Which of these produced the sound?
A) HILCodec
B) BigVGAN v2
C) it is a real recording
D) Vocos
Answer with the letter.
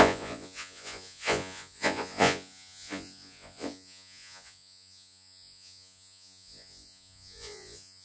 D